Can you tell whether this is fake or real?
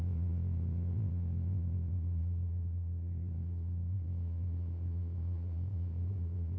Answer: fake